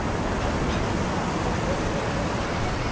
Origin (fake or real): real